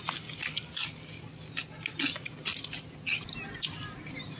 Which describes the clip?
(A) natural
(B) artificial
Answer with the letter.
A